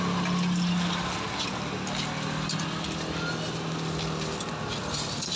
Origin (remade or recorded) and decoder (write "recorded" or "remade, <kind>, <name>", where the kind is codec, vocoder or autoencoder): recorded